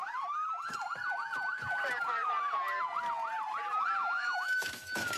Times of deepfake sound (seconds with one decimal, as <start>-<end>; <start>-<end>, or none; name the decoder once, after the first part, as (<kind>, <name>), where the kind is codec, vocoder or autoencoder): 4.0-5.2 (autoencoder, DAC-VAE)